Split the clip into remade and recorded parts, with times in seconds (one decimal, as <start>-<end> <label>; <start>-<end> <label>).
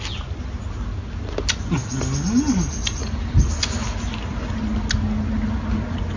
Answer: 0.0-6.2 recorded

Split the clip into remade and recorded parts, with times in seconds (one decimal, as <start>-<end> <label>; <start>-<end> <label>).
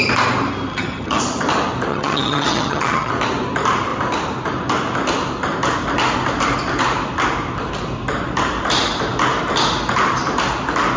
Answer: 0.0-0.7 recorded; 0.7-1.2 remade; 1.2-1.9 recorded; 1.9-3.1 remade; 3.1-11.0 recorded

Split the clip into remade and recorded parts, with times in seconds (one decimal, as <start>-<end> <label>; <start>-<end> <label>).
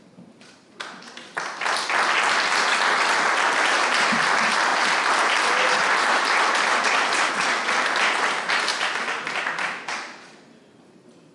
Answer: 0.0-11.3 recorded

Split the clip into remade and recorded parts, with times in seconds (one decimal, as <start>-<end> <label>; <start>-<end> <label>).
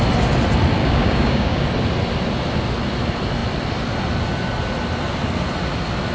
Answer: 0.0-0.8 recorded; 0.8-1.6 remade; 1.6-6.1 recorded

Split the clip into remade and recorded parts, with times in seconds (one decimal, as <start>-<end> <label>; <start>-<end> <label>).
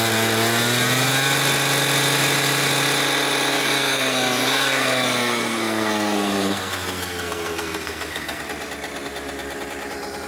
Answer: 0.0-3.5 recorded; 3.5-8.4 remade; 8.4-10.3 recorded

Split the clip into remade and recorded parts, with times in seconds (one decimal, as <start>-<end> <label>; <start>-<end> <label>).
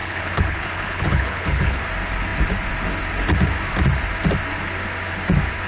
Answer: 0.0-1.8 remade; 1.8-5.7 recorded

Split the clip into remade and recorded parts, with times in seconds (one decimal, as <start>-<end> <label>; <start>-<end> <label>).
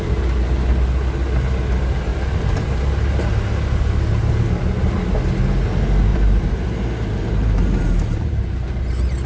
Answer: 0.0-2.1 recorded; 2.1-2.8 remade; 2.8-6.1 recorded; 6.1-8.8 remade; 8.8-9.3 recorded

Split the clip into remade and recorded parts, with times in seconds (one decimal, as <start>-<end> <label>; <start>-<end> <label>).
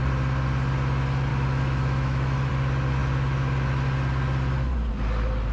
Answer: 0.0-1.3 recorded; 1.3-2.5 remade; 2.5-5.5 recorded